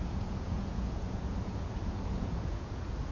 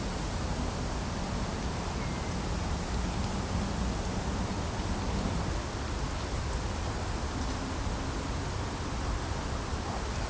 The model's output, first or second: first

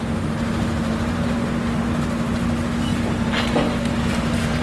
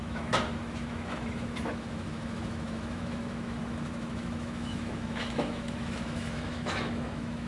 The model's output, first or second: second